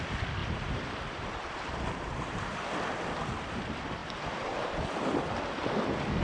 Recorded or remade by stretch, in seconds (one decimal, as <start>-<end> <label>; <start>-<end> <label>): 0.0-0.4 recorded; 0.4-2.4 remade; 2.4-4.0 recorded; 4.0-5.2 remade; 5.2-6.2 recorded